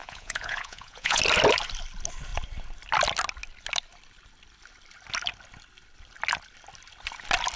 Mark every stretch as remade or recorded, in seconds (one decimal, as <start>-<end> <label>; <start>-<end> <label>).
0.0-1.2 remade; 1.2-7.6 recorded